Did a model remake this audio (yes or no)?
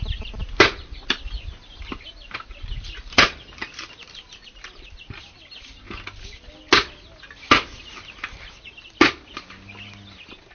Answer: no